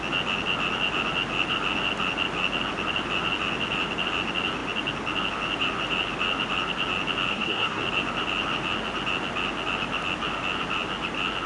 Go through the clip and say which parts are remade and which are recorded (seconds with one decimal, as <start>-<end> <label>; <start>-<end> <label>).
0.0-7.3 recorded; 7.3-7.8 remade; 7.8-11.5 recorded